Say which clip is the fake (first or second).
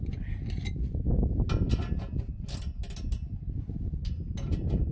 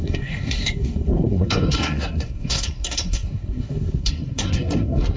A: second